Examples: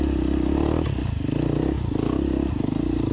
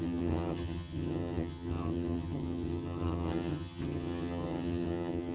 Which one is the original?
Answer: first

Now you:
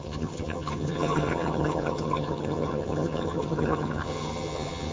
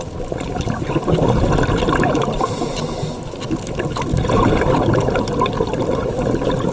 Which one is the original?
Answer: second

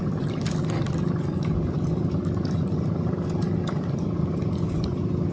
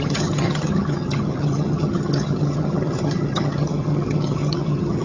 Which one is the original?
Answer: first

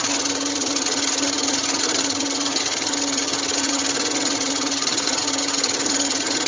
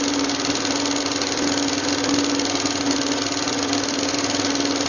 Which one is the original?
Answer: second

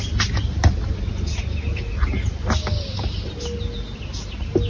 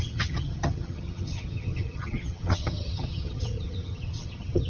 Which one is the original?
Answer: first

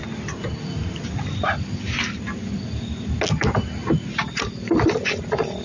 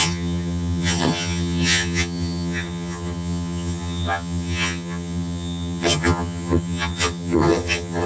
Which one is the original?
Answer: first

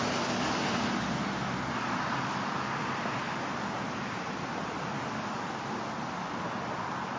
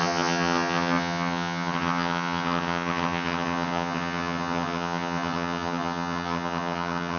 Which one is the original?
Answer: first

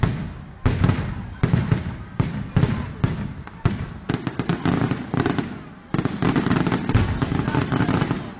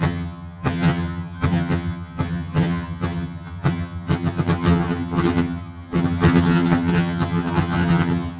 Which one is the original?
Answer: first